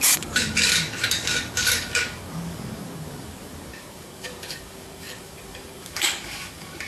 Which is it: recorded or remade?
remade